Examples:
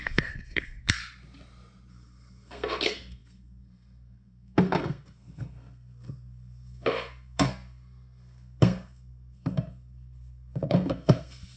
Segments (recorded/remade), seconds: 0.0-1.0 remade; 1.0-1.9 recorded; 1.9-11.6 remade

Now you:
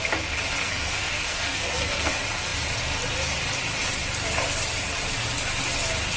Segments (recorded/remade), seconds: 0.0-0.6 recorded; 0.6-2.1 remade; 2.1-6.2 recorded